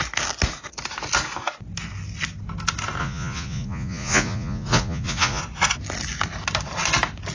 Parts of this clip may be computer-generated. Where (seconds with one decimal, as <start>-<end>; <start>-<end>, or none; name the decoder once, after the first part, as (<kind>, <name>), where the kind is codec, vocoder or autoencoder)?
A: 3.0-5.4 (vocoder, Vocos)